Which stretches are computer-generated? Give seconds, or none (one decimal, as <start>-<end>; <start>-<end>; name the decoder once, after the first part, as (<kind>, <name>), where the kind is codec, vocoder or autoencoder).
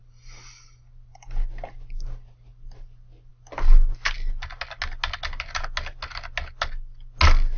none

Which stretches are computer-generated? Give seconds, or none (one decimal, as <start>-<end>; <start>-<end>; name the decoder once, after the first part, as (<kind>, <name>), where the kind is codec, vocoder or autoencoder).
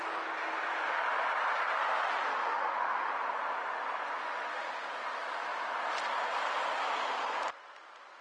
2.4-3.1 (autoencoder, DAC-VAE); 4.2-4.7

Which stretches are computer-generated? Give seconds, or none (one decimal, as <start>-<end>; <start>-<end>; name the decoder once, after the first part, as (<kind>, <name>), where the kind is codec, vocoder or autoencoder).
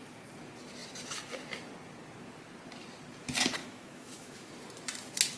3.6-4.5 (autoencoder, DAC-VAE)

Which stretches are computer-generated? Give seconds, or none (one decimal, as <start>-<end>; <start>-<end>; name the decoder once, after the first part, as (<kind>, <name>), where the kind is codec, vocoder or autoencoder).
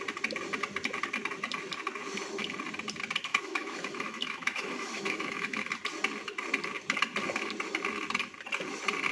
3.3-5.7 (autoencoder, DAC-VAE)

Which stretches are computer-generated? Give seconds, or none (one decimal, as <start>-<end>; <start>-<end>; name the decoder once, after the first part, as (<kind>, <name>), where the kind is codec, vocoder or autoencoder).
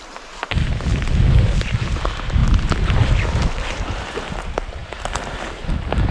none